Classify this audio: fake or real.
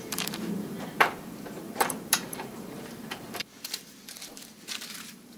fake